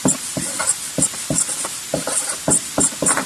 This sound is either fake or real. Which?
real